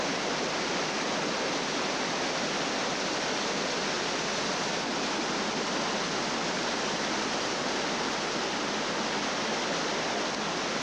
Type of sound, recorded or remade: recorded